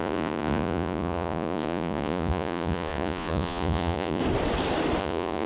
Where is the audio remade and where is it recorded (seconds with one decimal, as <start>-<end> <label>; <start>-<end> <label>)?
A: 0.0-4.2 remade; 4.2-5.0 recorded; 5.0-5.5 remade